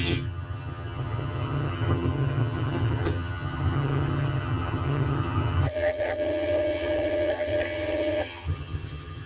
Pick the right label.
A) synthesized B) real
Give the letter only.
A